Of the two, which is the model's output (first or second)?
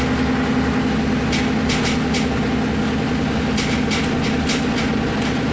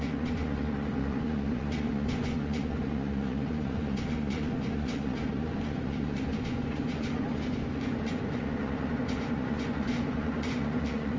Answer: second